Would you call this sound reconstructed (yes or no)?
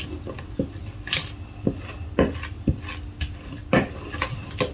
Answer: no